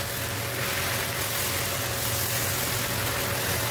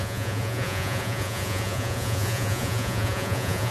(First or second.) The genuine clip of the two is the first